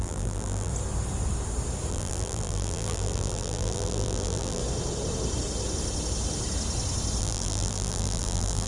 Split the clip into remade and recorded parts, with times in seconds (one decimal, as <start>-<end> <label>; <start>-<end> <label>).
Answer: 0.0-0.7 remade; 0.7-1.9 recorded; 1.9-4.6 remade; 4.6-7.2 recorded; 7.2-8.7 remade